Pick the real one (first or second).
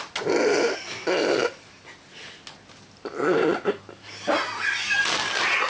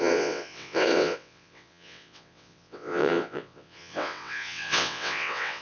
first